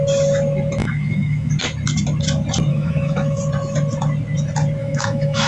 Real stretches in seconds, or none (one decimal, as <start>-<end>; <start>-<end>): 0.0-0.8; 1.5-2.7; 3.4-4.8